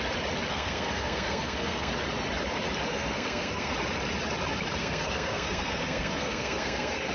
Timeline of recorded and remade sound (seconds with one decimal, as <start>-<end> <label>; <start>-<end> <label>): 0.0-0.5 recorded; 0.5-1.9 remade; 1.9-2.9 recorded; 2.9-3.7 remade; 3.7-4.8 recorded; 4.8-7.1 remade